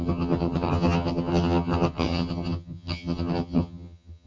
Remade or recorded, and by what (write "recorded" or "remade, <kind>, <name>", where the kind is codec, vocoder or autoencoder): remade, vocoder, HiFi-GAN